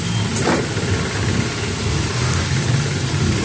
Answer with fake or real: real